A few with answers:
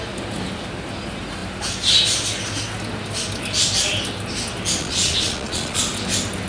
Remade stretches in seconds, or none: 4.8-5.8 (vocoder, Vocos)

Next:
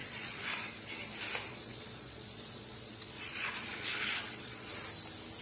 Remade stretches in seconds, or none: 0.0-0.7 (vocoder, Vocos); 1.5-4.7

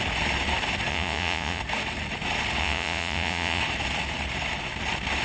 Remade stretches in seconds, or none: 0.9-1.6 (vocoder, Vocos); 2.6-3.6

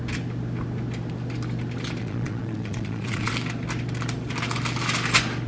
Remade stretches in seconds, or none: 2.0-3.3 (vocoder, Vocos)

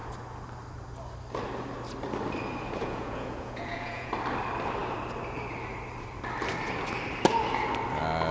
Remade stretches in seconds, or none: 2.8-4.1 (vocoder, Vocos)

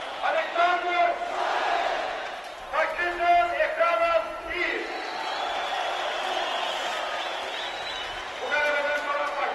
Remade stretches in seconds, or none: 0.0-2.4 (vocoder, Vocos); 6.3-7.4; 9.0-9.5

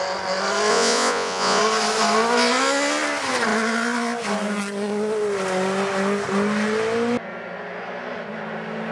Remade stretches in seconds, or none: 0.7-1.6 (vocoder, Vocos)

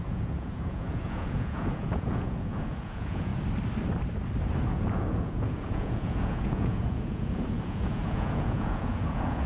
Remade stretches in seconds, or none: 0.0-3.3 (vocoder, Vocos); 4.7-9.5